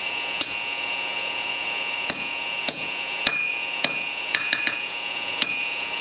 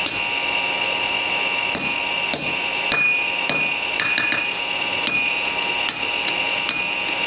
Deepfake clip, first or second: first